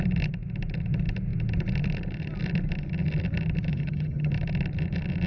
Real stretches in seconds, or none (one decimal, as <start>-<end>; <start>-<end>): 0.0-3.7; 4.3-5.3